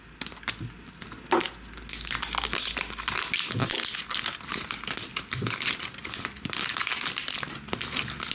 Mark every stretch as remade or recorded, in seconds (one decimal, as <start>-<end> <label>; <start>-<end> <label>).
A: 0.0-3.6 recorded; 3.6-7.4 remade; 7.4-8.3 recorded